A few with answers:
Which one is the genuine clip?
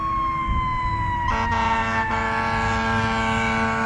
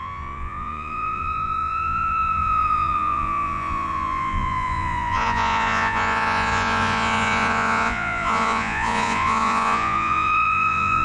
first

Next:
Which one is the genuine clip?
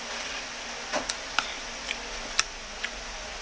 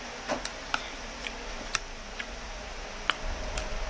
first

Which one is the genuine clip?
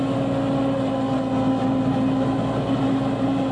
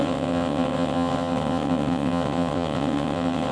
first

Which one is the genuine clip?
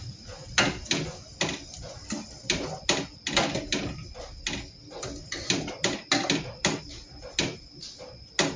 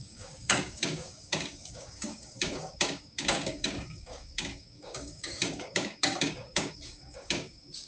first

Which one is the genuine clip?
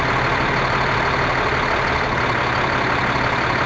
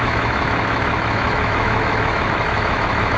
first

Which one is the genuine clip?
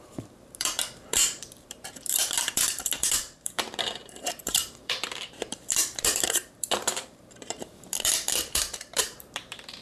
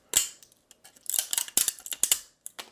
second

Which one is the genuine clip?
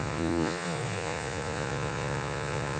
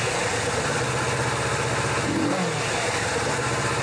second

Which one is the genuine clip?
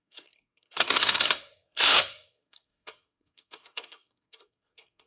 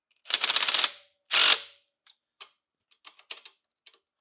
second